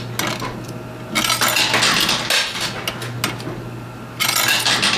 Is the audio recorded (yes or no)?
yes